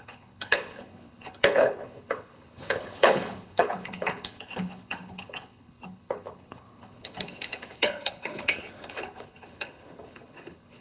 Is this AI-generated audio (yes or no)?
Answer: yes